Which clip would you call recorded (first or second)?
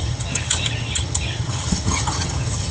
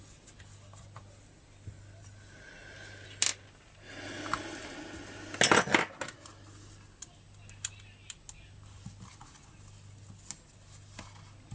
second